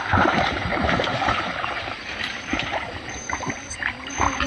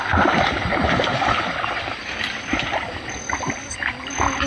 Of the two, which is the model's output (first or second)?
first